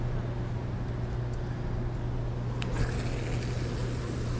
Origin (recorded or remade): recorded